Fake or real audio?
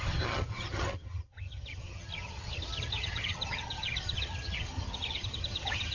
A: fake